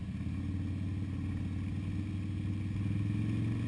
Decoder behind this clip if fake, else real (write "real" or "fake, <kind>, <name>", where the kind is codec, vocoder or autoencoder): real